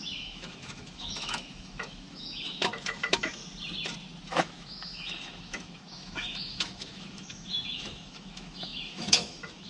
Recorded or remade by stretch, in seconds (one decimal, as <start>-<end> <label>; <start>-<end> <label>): 0.0-3.4 remade; 3.4-4.3 recorded; 4.3-9.7 remade